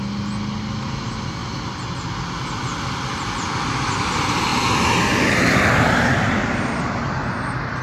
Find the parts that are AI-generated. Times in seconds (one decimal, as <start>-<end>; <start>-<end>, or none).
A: none